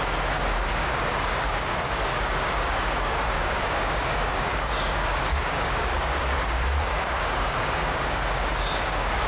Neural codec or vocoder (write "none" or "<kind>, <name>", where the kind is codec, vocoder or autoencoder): codec, DAC